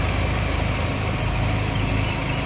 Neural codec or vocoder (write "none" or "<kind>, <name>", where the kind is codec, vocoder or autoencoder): none